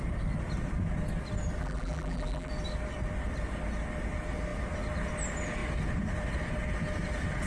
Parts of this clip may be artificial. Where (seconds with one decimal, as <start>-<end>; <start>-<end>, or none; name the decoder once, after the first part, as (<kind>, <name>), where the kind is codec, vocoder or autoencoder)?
1.6-2.5 (vocoder, BigVGAN v2)